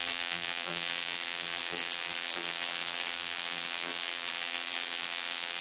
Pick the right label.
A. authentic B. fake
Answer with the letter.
B